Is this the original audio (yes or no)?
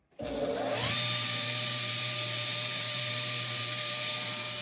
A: no